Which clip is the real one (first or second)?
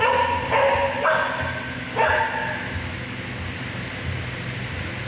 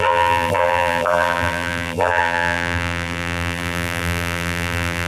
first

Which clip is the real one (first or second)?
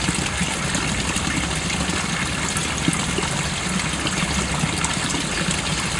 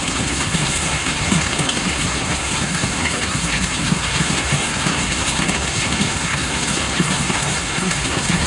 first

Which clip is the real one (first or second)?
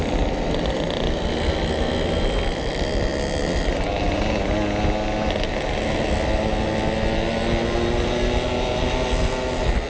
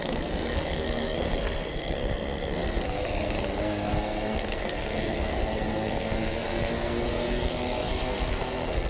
first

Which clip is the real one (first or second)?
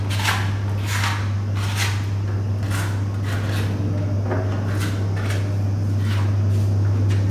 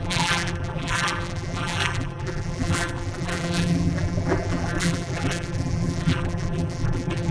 first